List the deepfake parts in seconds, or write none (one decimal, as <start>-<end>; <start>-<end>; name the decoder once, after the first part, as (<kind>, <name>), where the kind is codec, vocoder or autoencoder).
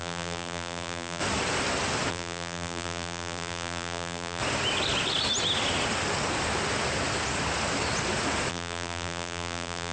0.0-1.2 (vocoder, BigVGAN v2); 2.1-4.4; 8.5-9.9